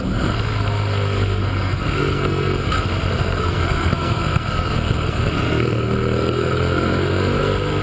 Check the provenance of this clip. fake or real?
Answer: fake